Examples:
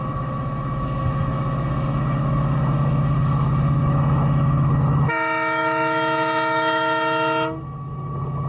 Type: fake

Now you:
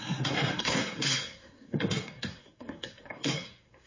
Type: fake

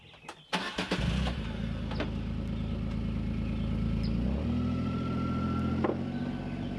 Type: real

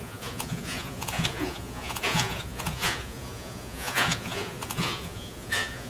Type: fake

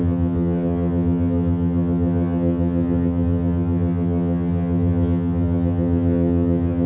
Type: fake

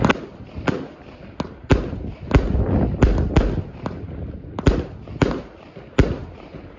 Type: real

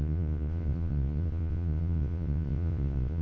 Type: fake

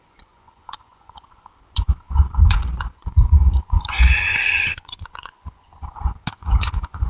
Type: fake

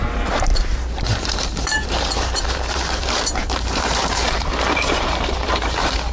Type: fake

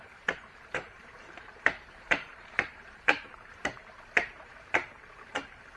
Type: fake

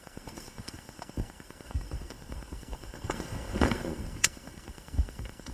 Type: fake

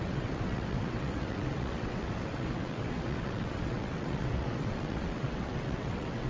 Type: fake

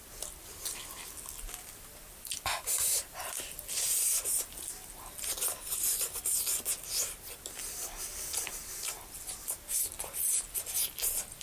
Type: real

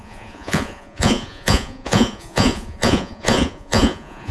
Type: fake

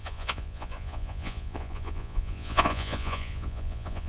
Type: fake